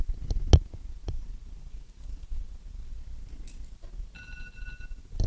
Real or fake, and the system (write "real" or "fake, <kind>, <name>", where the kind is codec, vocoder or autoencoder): real